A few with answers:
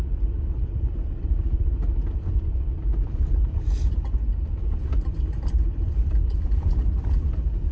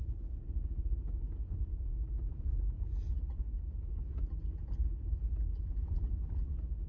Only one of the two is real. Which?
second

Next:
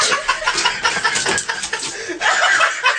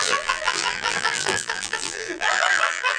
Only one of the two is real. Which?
first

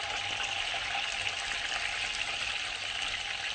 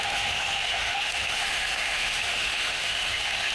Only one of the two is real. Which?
first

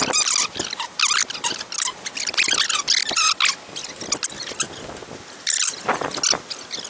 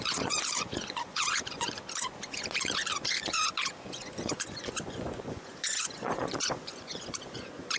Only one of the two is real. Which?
first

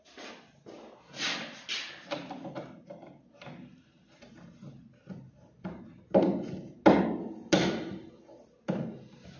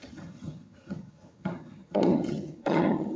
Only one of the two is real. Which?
first